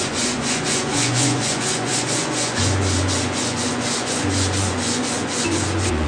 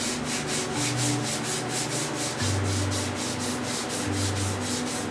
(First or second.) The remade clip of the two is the first